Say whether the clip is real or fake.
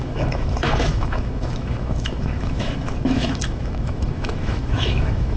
fake